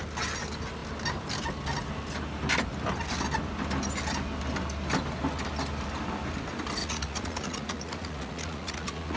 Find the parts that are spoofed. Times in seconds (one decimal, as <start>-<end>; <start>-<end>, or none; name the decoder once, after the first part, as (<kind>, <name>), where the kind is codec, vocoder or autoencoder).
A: 6.8-9.2 (vocoder, Vocos)

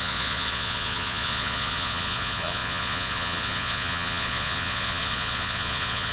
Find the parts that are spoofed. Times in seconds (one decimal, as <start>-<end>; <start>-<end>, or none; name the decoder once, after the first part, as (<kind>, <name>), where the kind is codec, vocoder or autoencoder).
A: 0.0-6.1 (vocoder, Vocos)

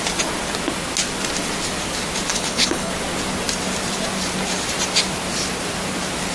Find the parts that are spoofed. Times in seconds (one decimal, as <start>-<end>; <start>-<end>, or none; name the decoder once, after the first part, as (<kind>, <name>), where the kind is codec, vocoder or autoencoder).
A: 2.3-2.9 (codec, HILCodec)

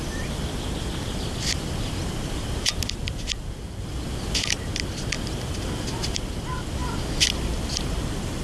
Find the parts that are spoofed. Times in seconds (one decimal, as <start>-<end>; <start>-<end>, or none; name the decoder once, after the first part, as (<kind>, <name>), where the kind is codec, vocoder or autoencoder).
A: none

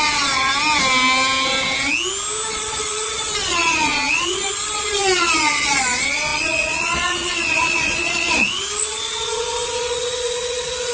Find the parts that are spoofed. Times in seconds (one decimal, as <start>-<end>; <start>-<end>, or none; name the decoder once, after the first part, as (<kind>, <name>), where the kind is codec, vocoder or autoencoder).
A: 0.0-0.5 (vocoder, Vocos); 2.5-10.9